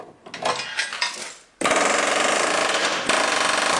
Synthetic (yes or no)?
no